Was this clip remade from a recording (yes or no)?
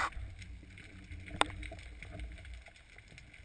no